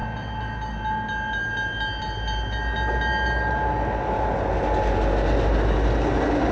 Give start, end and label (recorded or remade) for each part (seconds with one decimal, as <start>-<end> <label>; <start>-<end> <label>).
0.0-6.5 recorded